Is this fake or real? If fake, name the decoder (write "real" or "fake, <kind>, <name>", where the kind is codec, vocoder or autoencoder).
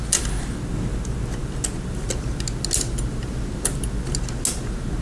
real